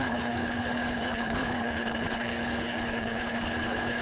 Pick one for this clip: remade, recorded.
remade